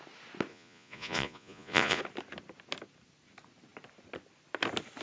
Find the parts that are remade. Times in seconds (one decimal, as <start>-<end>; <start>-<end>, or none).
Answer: 0.5-2.0